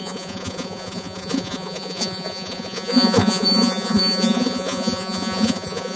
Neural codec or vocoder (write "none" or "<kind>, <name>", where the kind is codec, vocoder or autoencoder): vocoder, Vocos